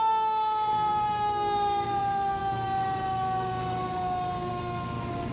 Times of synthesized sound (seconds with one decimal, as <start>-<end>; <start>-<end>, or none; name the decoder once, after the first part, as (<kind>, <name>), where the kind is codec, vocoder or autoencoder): 0.0-5.3 (codec, DAC)